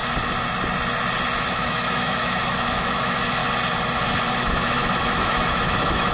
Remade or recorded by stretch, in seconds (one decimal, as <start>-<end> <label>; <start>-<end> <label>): 0.0-1.5 recorded; 1.5-3.4 remade; 3.4-4.3 recorded; 4.3-6.1 remade